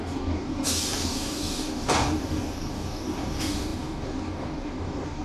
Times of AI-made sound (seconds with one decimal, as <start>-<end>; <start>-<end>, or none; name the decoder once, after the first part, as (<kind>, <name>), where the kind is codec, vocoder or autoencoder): 0.0-5.2 (codec, DAC)